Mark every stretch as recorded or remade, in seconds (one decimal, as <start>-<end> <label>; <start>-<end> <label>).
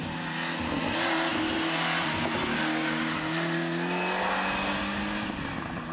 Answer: 0.0-5.9 recorded